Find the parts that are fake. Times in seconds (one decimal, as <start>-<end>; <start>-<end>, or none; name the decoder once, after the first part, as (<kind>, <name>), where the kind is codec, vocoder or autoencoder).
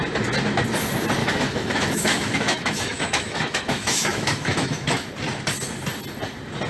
1.2-5.1 (autoencoder, DAC-VAE)